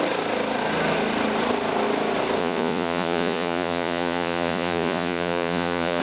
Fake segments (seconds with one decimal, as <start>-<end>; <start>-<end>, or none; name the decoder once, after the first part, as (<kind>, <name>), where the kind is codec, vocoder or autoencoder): 2.4-6.0 (vocoder, Vocos)